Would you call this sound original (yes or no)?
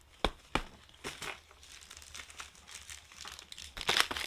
yes